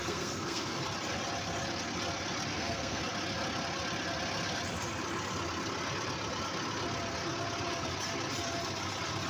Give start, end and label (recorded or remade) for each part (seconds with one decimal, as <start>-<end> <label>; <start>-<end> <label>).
0.0-0.8 remade; 0.8-2.5 recorded; 2.5-3.0 remade; 3.0-9.3 recorded